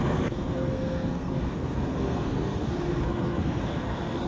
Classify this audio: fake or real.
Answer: fake